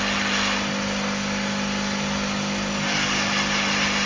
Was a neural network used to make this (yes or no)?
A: no